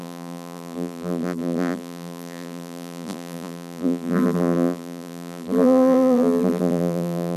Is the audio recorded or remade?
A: remade